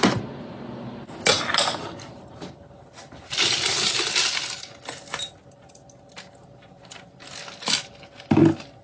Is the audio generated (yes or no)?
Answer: no